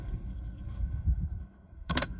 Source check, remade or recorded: remade